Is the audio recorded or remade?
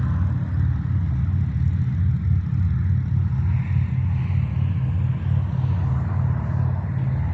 recorded